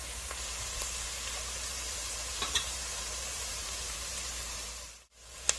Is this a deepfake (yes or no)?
yes